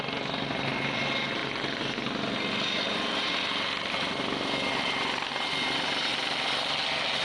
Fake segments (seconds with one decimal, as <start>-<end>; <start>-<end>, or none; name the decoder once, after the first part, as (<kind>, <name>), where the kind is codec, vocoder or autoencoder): none